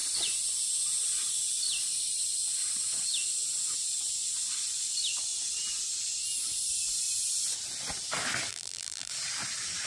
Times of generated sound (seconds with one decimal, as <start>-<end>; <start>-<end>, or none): 8.5-9.1